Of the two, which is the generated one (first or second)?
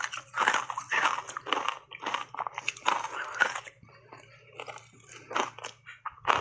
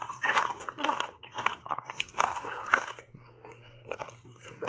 second